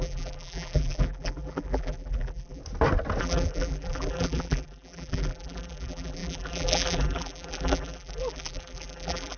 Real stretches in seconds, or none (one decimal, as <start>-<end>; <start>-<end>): 2.6-3.2